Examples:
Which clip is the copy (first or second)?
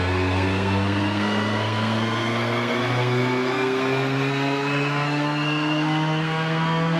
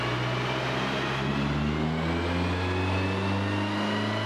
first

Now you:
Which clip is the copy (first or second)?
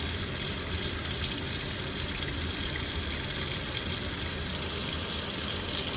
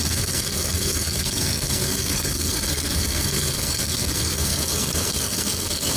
second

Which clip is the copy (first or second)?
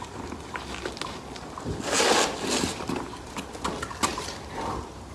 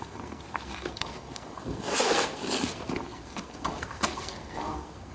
second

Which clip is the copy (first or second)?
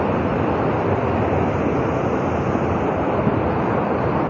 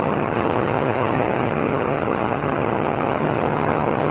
second